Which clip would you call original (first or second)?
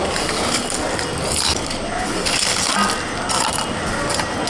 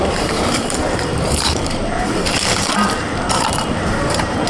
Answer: first